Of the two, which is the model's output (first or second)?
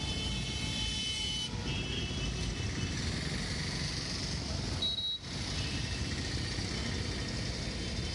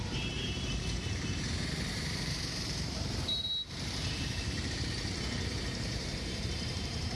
second